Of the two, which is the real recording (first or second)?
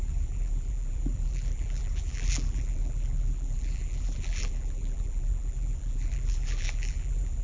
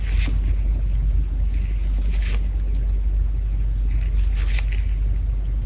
second